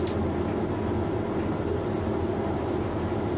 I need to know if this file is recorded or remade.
recorded